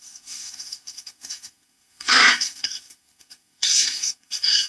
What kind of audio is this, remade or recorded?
remade